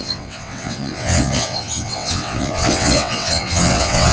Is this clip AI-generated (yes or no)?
yes